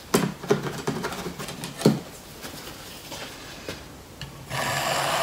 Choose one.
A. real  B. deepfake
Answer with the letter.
A